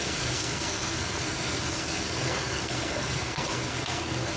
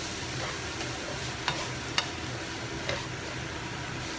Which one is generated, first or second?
first